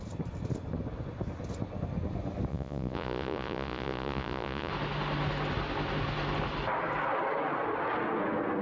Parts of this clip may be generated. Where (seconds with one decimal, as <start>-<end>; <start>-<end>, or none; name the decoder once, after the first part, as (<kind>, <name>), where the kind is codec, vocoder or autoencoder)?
2.5-4.7 (vocoder, Vocos)